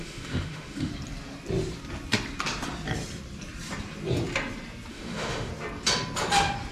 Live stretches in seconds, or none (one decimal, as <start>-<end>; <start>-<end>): 0.9-4.9; 5.5-6.7

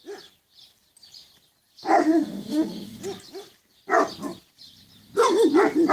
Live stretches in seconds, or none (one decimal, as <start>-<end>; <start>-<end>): 0.0-1.8; 3.0-5.9

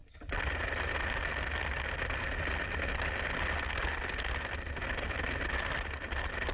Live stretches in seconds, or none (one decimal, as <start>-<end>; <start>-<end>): 0.0-6.5

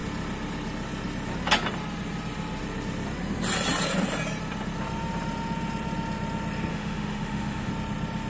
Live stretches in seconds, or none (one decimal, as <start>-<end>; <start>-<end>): 0.0-6.7; 7.7-8.3

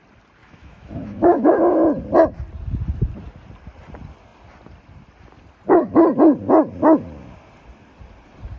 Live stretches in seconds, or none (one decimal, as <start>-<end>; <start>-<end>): 0.0-0.4; 1.6-8.6